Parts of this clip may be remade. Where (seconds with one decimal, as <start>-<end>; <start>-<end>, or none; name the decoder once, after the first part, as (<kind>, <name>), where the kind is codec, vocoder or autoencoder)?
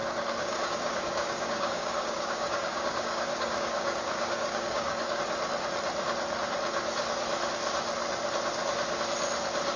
0.0-5.2 (codec, DAC)